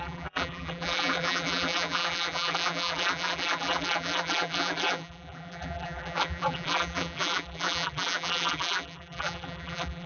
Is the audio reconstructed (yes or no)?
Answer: yes